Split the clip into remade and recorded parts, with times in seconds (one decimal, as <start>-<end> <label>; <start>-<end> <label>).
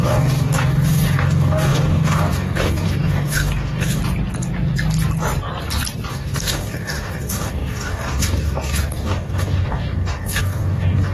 0.0-4.0 remade; 4.0-6.1 recorded; 6.1-11.1 remade